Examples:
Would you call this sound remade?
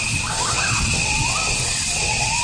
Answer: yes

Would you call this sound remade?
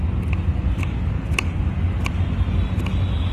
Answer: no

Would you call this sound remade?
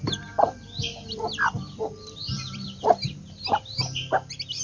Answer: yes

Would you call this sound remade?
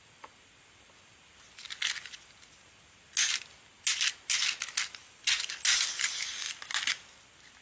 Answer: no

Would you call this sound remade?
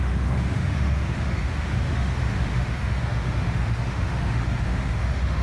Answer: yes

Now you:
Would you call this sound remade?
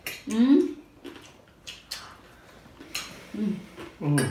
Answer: no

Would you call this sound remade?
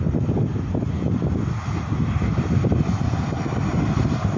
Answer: no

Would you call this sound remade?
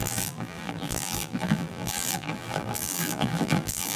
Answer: yes